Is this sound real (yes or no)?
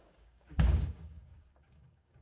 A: no